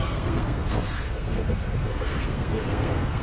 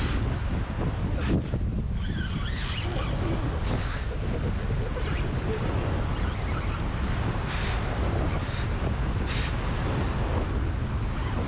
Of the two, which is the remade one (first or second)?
first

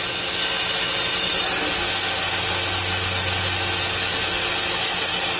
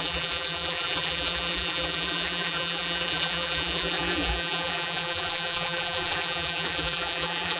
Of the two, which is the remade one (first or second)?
second